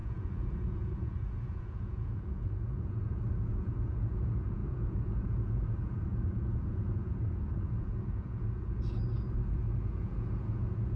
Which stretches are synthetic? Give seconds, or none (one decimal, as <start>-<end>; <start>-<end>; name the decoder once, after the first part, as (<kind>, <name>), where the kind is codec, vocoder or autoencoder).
0.0-11.0 (vocoder, Vocos)